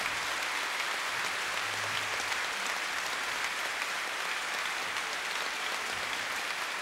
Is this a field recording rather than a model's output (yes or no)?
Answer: yes